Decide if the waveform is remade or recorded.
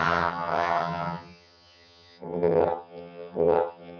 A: remade